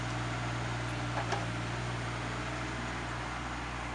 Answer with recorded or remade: recorded